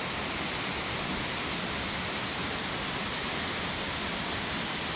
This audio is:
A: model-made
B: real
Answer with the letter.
A